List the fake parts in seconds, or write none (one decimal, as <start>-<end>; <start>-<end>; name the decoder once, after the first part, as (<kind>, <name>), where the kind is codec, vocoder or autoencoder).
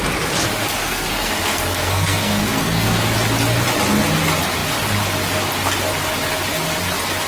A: 0.8-3.0 (codec, SNAC)